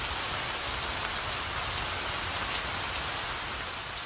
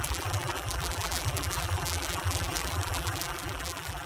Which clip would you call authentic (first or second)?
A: first